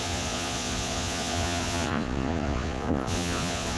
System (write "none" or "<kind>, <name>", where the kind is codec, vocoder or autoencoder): vocoder, Vocos